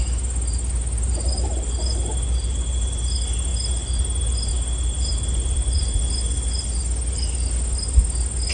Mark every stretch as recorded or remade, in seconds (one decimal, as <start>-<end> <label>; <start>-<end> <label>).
0.0-8.5 recorded